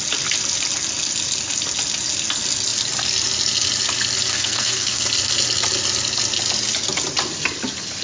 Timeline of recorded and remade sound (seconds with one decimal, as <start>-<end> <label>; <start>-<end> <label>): 0.0-4.3 recorded; 4.3-5.0 remade; 5.0-8.0 recorded